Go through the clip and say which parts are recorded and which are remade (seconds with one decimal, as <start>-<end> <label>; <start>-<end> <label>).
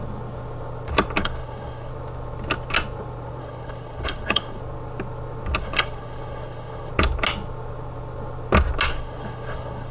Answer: 0.0-1.2 recorded; 1.2-1.9 remade; 1.9-3.4 recorded; 3.4-4.6 remade; 4.6-5.6 recorded; 5.6-6.9 remade; 6.9-8.9 recorded; 8.9-9.9 remade